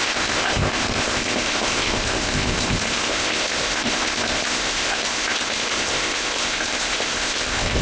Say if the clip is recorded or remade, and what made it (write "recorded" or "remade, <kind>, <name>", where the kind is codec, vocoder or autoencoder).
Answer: remade, codec, ZipCodec